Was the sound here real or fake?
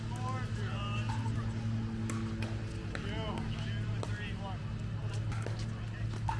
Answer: real